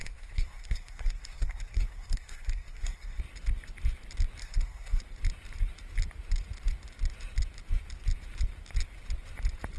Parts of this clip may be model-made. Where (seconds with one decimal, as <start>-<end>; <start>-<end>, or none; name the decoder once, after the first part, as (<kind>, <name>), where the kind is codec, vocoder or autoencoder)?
0.0-3.2 (codec, SNAC); 4.4-5.0